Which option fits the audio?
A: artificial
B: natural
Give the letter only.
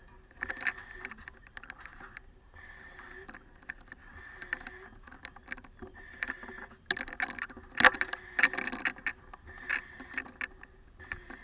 B